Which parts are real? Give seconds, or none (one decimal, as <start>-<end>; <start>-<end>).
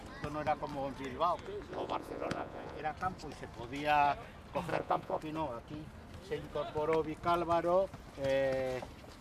0.0-1.7; 2.8-4.7; 5.2-9.2